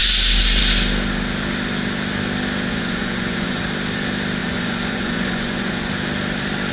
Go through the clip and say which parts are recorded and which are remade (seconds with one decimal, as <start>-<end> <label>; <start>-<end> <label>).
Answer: 0.0-2.7 recorded; 2.7-3.6 remade; 3.6-4.4 recorded; 4.4-5.9 remade; 5.9-6.7 recorded